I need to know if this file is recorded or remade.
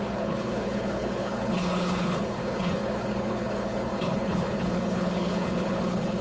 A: remade